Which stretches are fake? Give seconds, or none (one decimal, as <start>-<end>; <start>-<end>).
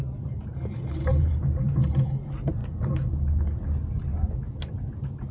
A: 1.1-2.2; 2.6-3.1